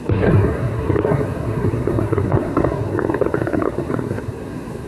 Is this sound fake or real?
fake